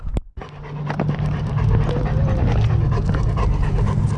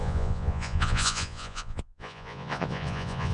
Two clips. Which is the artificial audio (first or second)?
second